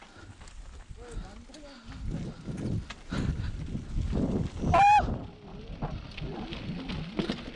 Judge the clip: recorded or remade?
recorded